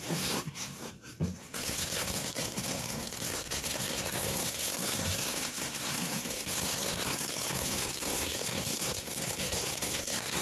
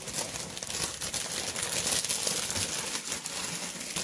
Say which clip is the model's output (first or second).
first